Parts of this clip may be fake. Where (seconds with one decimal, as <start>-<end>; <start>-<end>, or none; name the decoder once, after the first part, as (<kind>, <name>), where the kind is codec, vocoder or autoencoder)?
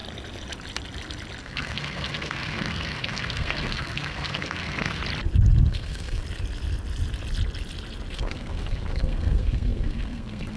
1.4-5.0 (codec, SNAC); 5.7-6.2; 8.1-10.6